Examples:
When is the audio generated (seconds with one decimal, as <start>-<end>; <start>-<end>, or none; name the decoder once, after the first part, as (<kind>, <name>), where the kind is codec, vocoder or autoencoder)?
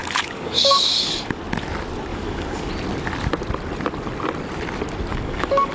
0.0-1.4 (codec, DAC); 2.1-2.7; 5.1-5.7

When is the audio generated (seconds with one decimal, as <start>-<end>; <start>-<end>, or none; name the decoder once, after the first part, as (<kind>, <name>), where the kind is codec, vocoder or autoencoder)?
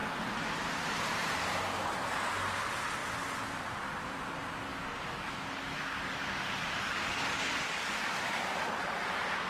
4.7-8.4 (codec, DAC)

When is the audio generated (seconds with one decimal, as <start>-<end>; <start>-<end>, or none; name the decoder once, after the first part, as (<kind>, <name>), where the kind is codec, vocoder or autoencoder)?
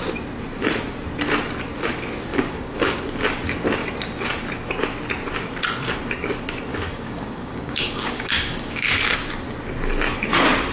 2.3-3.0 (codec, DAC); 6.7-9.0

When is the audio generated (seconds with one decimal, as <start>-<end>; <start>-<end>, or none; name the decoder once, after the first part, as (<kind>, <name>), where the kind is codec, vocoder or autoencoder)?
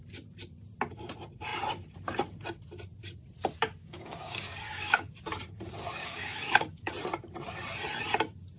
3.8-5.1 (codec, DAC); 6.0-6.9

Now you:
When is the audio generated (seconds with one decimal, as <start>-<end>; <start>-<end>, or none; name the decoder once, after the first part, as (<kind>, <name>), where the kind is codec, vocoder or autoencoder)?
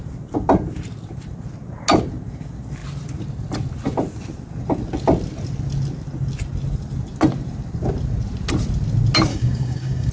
9.3-10.1 (codec, DAC)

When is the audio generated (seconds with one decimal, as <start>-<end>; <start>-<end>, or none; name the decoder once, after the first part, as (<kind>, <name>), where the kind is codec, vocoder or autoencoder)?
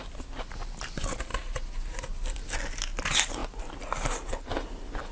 none